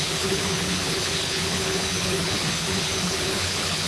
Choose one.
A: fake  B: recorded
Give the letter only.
A